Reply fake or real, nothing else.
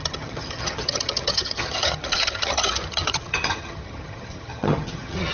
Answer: fake